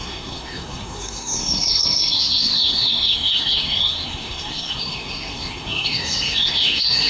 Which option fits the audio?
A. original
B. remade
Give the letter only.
B